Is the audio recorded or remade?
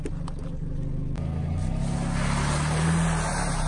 recorded